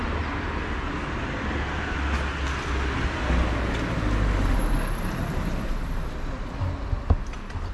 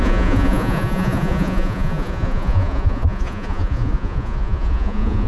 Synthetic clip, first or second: second